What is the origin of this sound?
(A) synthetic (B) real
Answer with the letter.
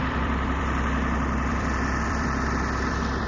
A